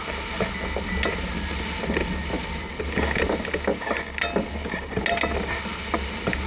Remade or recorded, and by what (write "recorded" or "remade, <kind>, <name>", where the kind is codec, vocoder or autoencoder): recorded